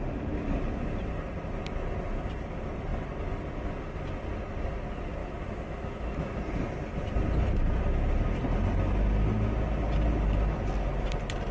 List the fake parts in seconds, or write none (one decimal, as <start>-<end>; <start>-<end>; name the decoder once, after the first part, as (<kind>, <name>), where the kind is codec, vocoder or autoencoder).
5.2-6.4 (autoencoder, DAC-VAE)